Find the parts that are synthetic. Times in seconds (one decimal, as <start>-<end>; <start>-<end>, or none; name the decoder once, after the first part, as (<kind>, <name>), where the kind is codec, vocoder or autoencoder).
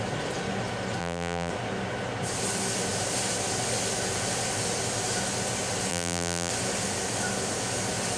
1.0-1.5 (vocoder, BigVGAN v2); 5.9-6.5